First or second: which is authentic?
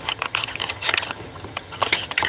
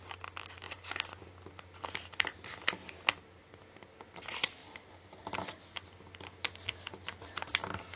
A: second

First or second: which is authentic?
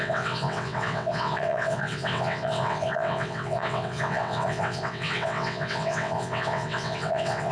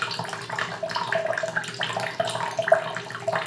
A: second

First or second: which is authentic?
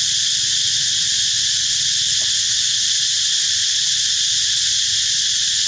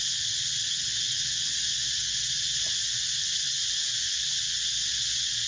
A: first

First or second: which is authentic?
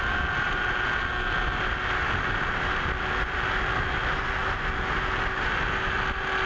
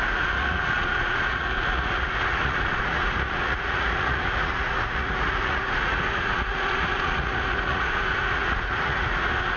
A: first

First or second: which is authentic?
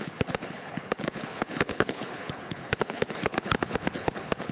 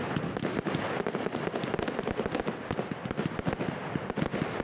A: second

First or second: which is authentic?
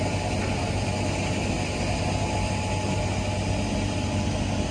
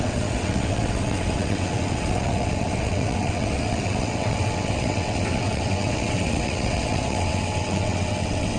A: first